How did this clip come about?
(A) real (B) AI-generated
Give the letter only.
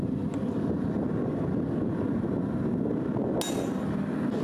A